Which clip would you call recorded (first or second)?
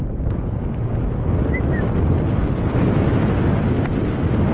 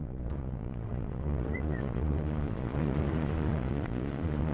first